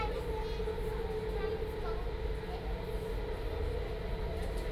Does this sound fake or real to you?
real